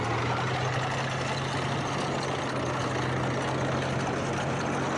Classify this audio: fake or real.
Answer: real